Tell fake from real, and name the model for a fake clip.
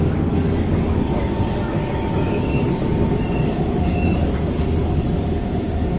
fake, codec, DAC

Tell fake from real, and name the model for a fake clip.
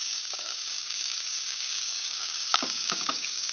fake, codec, DAC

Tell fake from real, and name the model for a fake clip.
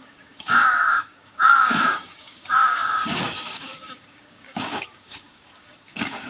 fake, codec, DAC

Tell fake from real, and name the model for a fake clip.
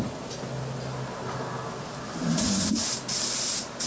real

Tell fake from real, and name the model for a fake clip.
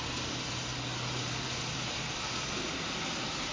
real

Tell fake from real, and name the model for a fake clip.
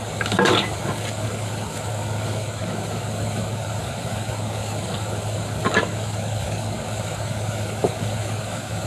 fake, codec, DAC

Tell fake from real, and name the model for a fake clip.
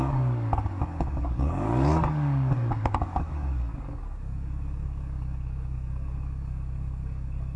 fake, codec, DAC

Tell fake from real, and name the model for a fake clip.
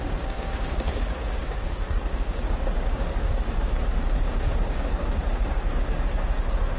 fake, codec, DAC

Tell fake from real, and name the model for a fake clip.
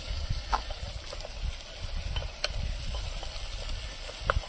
real